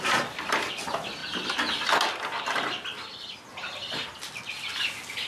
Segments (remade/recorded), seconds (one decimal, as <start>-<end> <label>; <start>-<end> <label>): 0.0-5.3 recorded

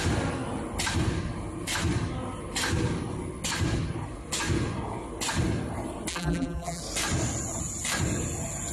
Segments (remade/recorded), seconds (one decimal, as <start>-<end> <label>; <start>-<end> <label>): 0.0-6.1 recorded; 6.1-6.8 remade; 6.8-8.7 recorded

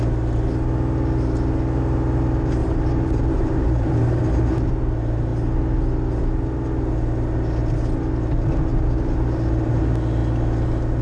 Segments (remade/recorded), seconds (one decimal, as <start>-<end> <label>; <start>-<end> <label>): 0.0-2.6 recorded; 2.6-4.4 remade; 4.4-11.0 recorded

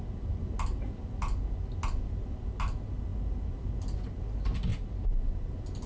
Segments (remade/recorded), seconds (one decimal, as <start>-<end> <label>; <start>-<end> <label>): 0.0-4.7 recorded; 4.7-5.5 remade; 5.5-5.9 recorded

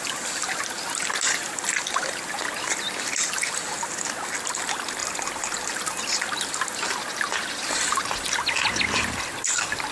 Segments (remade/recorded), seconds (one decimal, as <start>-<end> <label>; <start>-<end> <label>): 0.0-9.9 recorded

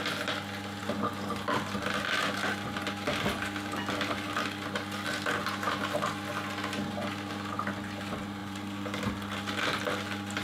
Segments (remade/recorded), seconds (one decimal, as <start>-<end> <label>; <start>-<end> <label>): 0.0-8.4 recorded; 8.4-9.0 remade; 9.0-10.4 recorded

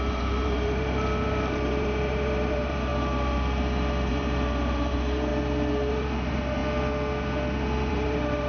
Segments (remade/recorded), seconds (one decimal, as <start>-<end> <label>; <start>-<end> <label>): 0.0-2.9 remade; 2.9-4.1 recorded; 4.1-5.3 remade; 5.3-5.9 recorded; 5.9-6.6 remade; 6.6-7.9 recorded; 7.9-8.5 remade

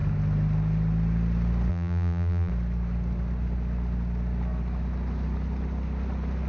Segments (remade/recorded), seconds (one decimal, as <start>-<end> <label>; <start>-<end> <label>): 0.0-1.7 recorded; 1.7-2.5 remade; 2.5-6.5 recorded